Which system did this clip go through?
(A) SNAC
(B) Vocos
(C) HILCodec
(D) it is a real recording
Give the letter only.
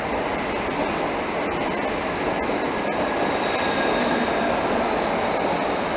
D